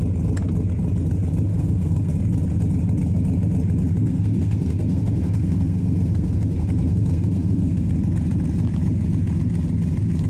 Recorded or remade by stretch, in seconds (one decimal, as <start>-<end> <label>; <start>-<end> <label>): 0.0-1.5 recorded; 1.5-2.1 remade; 2.1-4.0 recorded; 4.0-8.0 remade; 8.0-10.3 recorded

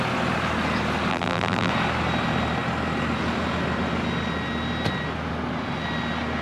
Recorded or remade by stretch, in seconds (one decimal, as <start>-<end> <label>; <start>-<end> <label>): 0.0-1.1 recorded; 1.1-1.7 remade; 1.7-6.4 recorded

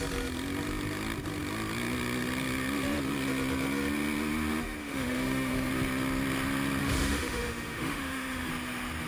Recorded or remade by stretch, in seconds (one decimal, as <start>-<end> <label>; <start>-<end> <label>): 0.0-4.8 recorded; 4.8-5.7 remade; 5.7-6.8 recorded; 6.8-8.5 remade; 8.5-9.1 recorded

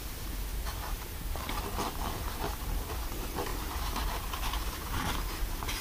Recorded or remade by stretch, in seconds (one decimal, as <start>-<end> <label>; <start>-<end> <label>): 0.0-0.5 recorded; 0.5-1.5 remade; 1.5-3.5 recorded; 3.5-5.1 remade; 5.1-5.8 recorded

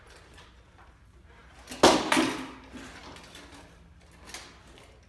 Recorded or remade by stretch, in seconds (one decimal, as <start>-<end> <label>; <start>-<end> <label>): 0.0-5.1 recorded

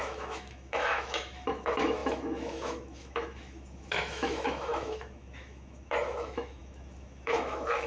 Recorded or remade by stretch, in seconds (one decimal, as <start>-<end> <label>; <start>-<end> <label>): 0.0-7.9 remade